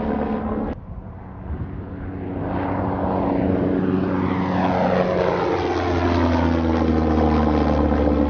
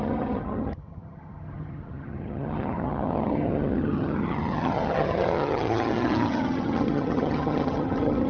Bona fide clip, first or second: first